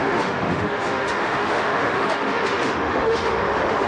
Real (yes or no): no